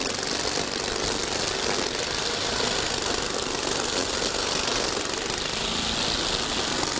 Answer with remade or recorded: recorded